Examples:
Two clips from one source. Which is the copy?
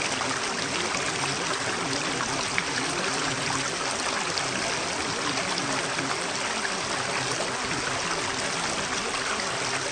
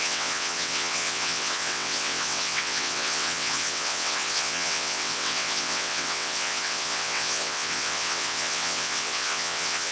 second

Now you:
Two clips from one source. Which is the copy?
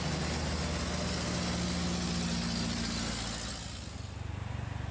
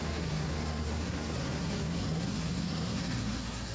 second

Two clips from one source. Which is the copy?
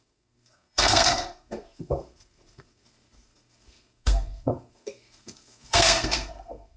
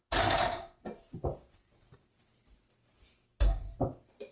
first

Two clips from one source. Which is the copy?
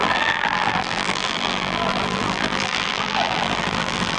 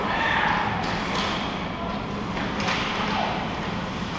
first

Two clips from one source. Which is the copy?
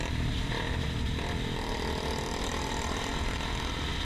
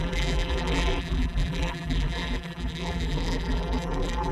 second